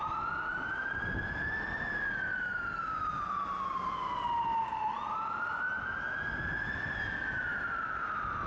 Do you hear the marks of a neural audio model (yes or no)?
no